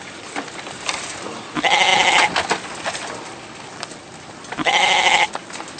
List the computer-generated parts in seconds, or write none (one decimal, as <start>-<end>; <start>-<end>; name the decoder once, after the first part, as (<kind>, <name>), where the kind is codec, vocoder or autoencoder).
none